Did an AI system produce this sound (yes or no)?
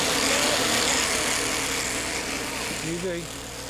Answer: no